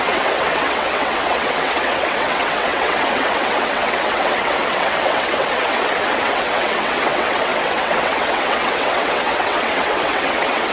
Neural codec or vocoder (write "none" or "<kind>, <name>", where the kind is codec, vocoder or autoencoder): vocoder, WaveNeXt